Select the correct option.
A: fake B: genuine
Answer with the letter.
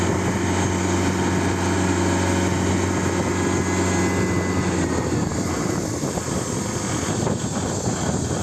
B